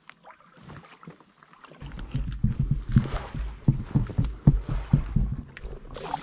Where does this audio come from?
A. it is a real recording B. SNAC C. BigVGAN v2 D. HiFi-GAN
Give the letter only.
A